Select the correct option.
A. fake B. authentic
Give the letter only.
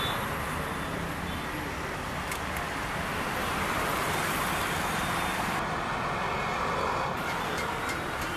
B